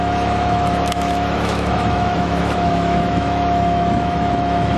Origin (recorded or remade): remade